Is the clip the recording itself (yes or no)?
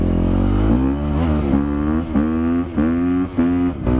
yes